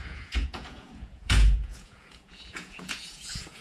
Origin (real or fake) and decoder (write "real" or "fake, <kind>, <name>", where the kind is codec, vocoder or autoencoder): fake, vocoder, Vocos